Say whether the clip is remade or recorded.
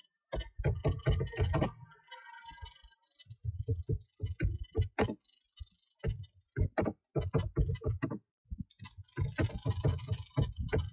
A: recorded